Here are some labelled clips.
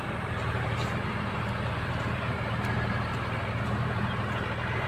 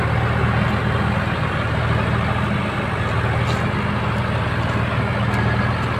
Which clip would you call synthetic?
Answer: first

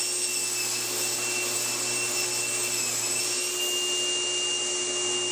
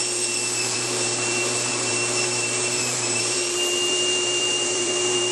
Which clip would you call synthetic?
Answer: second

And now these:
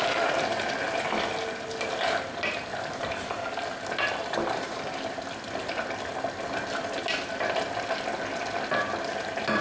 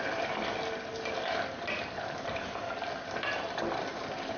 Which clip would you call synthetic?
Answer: second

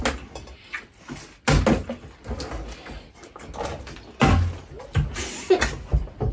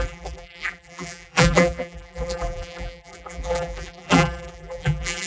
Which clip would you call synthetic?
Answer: second